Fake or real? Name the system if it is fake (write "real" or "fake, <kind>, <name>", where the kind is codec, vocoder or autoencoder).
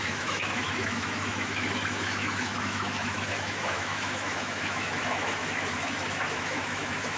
fake, autoencoder, DAC-VAE